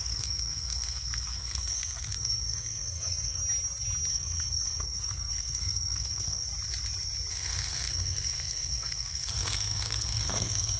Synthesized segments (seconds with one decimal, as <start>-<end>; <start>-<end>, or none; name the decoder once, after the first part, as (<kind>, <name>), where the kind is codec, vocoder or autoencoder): 0.0-3.4 (codec, SNAC); 4.1-6.5; 7.3-10.8

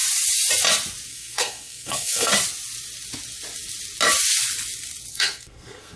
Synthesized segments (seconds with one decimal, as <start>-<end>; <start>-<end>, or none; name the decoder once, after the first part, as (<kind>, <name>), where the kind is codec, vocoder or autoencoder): 1.1-2.3 (codec, SNAC); 5.1-6.0

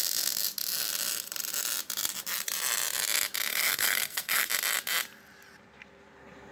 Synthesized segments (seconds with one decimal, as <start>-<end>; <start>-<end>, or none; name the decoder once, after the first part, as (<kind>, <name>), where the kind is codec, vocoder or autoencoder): 3.5-4.5 (codec, SNAC)

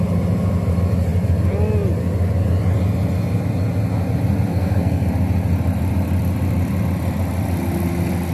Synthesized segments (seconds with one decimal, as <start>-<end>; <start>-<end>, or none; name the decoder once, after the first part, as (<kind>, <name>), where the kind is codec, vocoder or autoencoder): 4.5-5.1 (codec, SNAC)

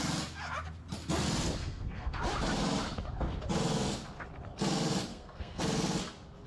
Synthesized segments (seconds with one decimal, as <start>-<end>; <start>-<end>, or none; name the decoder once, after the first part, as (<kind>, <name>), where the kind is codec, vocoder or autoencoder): 1.6-2.2 (codec, SNAC); 5.1-5.6

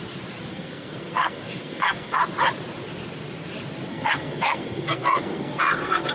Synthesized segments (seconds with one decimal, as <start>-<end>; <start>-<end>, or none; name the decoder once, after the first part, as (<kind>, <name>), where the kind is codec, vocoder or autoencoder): 0.5-2.2 (codec, SNAC); 3.9-6.1

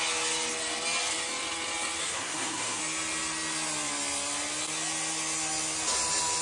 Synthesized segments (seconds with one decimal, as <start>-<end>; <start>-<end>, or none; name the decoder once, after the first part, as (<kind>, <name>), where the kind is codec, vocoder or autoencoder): 2.0-2.8 (codec, SNAC)

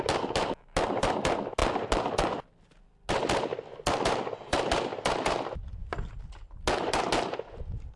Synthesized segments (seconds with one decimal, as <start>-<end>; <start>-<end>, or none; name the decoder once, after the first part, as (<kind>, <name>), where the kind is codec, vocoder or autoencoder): none